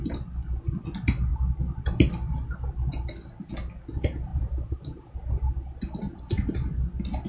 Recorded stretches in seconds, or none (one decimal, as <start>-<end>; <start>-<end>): 0.0-4.3; 5.5-7.3